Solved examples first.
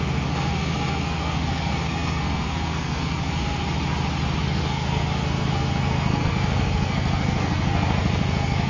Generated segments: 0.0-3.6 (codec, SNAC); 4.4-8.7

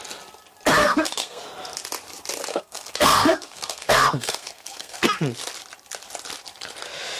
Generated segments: 0.8-1.4 (codec, SNAC); 2.5-5.2